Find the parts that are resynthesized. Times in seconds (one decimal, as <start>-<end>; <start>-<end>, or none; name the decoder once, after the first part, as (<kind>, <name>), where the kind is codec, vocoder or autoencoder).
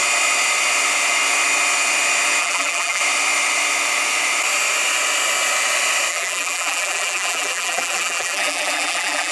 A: 2.4-3.0 (vocoder, BigVGAN v2); 6.1-9.3